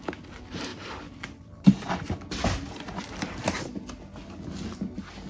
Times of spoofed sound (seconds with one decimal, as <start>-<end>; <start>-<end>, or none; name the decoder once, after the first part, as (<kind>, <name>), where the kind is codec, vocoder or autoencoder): none